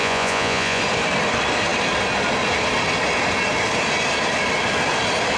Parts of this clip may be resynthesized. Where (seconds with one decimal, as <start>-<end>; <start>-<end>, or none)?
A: 0.0-0.8